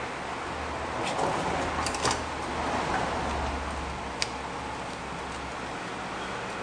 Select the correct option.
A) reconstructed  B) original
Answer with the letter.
B